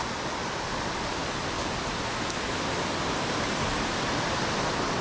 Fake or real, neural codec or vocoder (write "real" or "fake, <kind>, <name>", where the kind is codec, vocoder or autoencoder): real